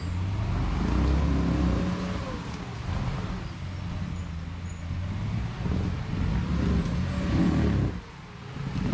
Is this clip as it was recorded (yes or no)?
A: yes